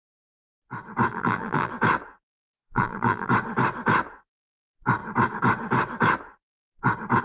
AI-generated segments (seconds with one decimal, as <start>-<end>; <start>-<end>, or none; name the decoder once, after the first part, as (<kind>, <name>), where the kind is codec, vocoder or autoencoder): 1.1-1.7 (vocoder, BigVGAN v2); 2.5-3.3